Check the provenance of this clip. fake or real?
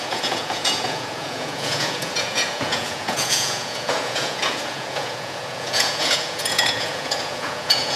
fake